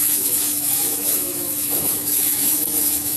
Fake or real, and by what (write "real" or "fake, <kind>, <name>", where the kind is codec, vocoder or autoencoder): fake, autoencoder, DAC-VAE